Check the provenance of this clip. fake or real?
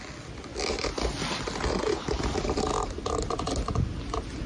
real